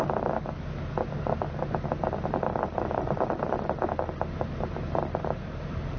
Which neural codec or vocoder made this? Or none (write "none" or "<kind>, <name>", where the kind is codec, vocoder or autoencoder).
none